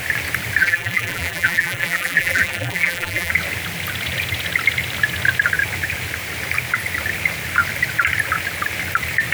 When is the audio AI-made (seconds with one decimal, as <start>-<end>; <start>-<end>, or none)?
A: 0.6-3.3